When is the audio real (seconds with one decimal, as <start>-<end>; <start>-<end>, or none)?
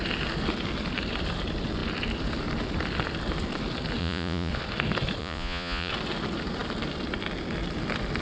0.0-4.0; 4.5-5.2; 5.9-8.2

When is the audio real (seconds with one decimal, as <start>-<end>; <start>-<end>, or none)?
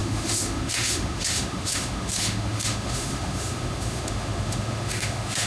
none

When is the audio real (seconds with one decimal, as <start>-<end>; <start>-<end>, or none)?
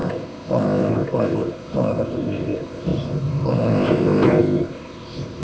none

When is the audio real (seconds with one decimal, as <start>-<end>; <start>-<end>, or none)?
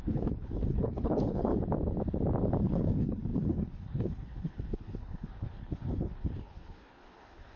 1.5-2.6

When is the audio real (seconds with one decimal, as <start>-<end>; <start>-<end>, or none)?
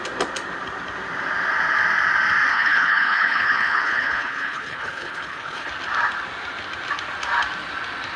0.0-2.5; 5.7-8.2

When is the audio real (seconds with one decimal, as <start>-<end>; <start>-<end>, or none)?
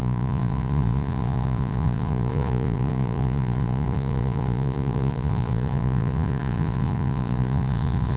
none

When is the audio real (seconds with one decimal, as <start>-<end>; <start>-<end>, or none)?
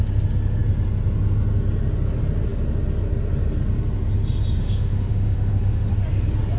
0.0-4.6; 5.9-6.6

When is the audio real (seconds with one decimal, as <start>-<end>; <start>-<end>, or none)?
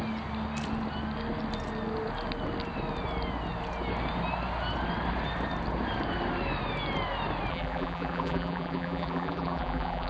0.0-7.5